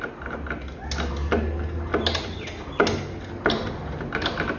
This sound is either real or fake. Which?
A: real